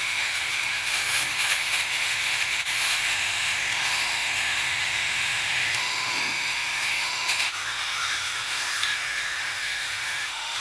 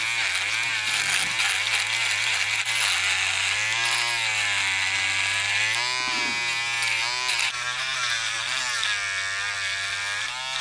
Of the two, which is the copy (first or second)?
first